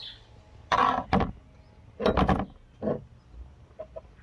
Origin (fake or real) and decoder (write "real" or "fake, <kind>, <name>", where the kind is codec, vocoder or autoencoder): real